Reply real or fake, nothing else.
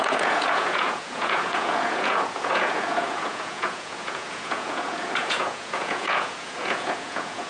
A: fake